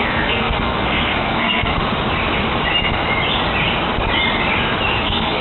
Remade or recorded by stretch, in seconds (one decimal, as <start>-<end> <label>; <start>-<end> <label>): 0.0-1.7 remade; 1.7-4.9 recorded; 4.9-5.4 remade

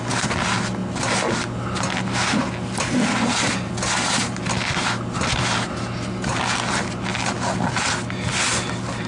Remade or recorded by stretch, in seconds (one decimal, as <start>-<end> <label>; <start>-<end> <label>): 0.0-9.1 recorded

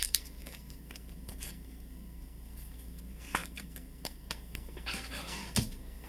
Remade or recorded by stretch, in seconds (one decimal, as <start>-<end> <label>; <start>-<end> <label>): 0.0-6.1 remade